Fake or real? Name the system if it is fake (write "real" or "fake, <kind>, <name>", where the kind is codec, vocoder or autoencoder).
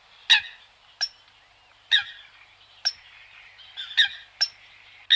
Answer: real